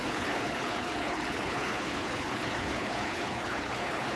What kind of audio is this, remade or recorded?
remade